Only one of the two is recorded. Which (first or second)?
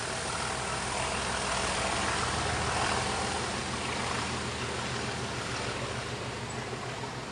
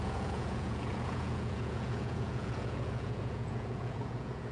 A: first